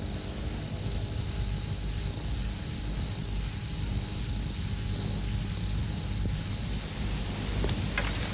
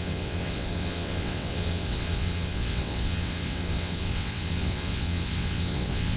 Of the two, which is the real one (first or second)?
first